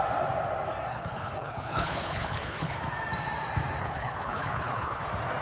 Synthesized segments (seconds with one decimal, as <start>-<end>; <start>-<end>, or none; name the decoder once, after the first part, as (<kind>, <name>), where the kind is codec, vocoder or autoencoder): 0.9-2.8 (codec, HILCodec); 3.8-5.0